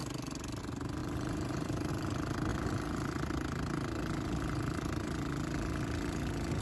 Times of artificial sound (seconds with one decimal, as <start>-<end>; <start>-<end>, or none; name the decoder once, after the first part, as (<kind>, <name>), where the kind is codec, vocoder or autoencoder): 1.0-1.9 (vocoder, BigVGAN v2)